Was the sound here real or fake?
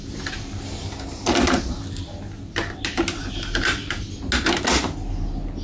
real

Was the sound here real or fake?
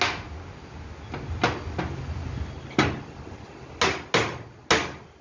real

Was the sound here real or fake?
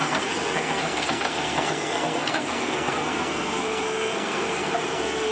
fake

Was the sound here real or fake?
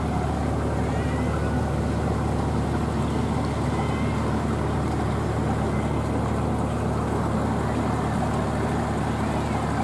real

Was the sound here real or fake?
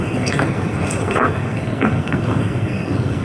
fake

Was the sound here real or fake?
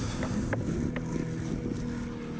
real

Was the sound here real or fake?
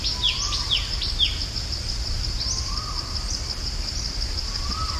real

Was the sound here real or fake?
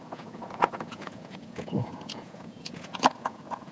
fake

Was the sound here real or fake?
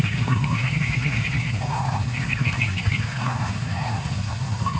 fake